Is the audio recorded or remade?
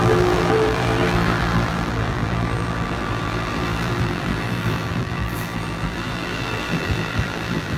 remade